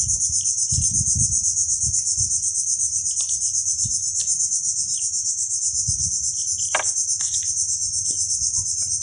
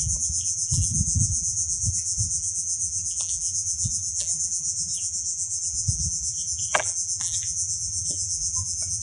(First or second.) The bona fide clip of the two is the first